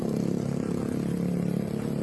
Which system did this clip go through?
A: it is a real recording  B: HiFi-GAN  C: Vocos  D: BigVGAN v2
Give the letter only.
D